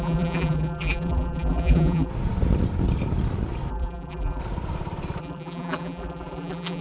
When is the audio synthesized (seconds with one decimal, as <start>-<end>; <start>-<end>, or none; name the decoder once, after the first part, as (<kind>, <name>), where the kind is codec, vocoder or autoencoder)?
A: 0.0-2.1 (vocoder, BigVGAN v2); 3.7-4.4; 5.2-6.8